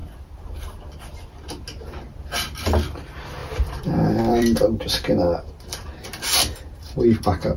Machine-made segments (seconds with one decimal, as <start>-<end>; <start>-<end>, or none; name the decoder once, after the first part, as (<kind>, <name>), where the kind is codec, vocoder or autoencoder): 2.4-4.8 (vocoder, BigVGAN v2); 5.4-7.6